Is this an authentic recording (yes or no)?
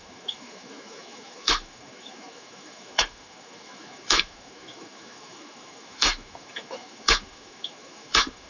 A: no